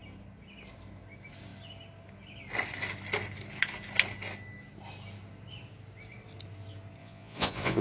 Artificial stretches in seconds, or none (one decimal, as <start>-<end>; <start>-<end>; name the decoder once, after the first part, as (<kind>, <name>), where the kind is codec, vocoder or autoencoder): 7.0-7.8 (vocoder, Vocos)